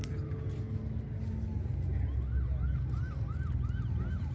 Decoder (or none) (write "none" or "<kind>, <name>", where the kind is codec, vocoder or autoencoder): none